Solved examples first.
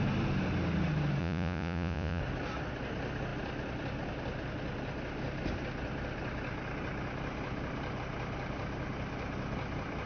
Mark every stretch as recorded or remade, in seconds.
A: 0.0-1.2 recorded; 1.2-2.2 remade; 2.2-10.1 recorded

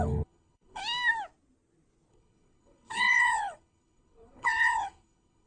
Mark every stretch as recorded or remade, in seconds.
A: 0.0-0.8 remade; 0.8-2.1 recorded; 2.1-5.5 remade

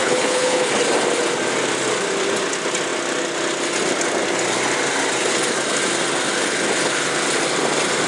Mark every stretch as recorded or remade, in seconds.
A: 0.0-0.7 remade; 0.7-8.1 recorded

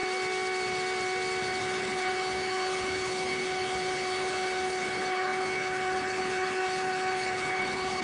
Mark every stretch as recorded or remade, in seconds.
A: 0.0-1.6 recorded; 1.6-8.0 remade